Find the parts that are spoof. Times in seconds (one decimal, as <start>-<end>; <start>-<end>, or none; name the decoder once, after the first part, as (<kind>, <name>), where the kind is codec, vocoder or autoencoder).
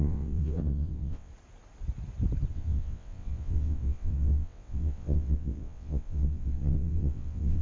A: 0.0-1.3 (vocoder, WaveNeXt); 2.5-7.6